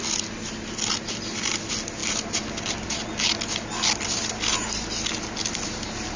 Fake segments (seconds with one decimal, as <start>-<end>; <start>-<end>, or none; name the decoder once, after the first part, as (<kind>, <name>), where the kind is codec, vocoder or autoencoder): none